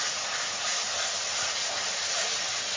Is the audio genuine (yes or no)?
yes